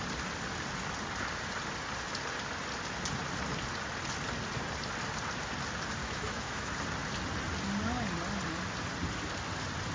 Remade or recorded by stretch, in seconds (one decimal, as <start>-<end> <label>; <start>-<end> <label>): 0.0-6.0 recorded; 6.0-6.7 remade; 6.7-9.9 recorded